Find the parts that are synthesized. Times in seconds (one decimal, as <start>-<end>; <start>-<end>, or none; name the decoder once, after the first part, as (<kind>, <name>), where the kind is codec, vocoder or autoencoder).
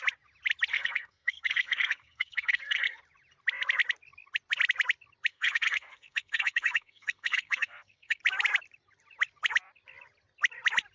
0.7-3.0 (codec, SNAC); 5.3-8.2